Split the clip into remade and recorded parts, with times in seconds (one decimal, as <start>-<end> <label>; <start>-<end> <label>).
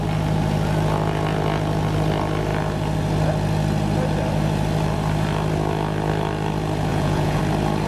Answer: 0.0-6.9 recorded; 6.9-7.4 remade; 7.4-7.9 recorded